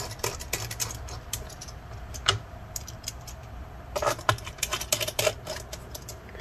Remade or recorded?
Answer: recorded